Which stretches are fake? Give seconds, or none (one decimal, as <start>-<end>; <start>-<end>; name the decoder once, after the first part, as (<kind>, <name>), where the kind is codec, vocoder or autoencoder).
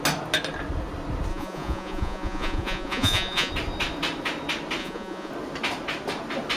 1.3-3.5 (vocoder, Vocos); 4.8-5.3